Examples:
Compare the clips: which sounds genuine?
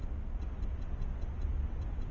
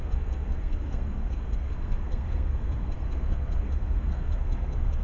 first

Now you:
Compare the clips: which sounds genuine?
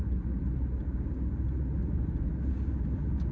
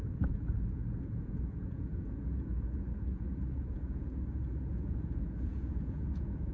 first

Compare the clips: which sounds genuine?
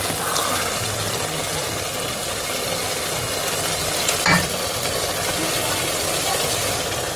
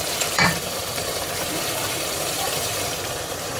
first